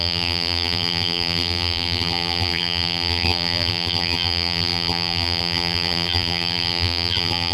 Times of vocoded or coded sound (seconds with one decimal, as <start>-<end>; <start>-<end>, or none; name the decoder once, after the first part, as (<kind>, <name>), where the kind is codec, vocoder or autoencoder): 0.0-7.5 (vocoder, BigVGAN v2)